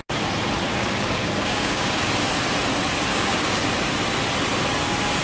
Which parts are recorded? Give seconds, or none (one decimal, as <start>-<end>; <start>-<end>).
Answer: 0.0-0.7; 2.0-3.1; 3.6-5.2